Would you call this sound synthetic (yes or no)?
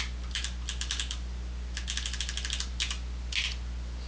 no